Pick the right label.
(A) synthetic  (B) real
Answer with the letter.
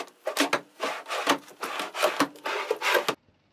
B